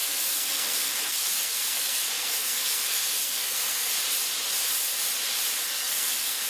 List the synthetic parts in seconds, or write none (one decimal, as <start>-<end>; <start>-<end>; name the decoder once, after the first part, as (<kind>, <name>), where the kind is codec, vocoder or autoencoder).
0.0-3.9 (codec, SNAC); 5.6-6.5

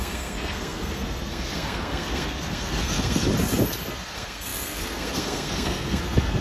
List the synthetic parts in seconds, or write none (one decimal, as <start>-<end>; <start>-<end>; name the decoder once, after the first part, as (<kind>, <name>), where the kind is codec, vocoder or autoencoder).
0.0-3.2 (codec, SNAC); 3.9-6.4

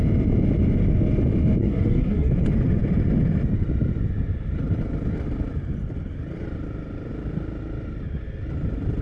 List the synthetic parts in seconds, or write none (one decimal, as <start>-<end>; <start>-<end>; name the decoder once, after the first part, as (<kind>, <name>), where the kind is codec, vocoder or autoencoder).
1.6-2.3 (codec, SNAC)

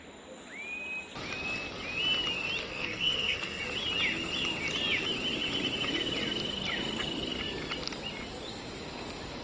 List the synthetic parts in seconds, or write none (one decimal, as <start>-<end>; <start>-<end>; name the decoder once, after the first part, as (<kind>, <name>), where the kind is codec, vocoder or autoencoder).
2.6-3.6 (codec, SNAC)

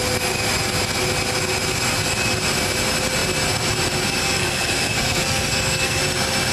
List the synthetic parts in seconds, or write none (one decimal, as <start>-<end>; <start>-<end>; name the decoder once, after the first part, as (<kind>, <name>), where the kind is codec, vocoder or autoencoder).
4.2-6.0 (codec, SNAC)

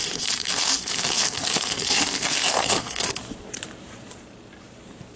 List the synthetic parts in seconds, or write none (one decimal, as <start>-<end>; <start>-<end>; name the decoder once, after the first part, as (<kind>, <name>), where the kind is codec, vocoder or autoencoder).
0.0-3.1 (codec, SNAC)